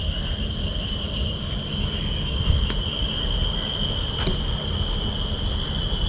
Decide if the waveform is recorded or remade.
recorded